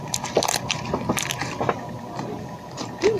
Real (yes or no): yes